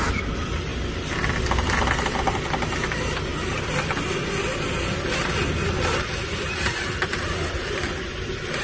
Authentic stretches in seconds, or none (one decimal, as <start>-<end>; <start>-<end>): 0.0-8.6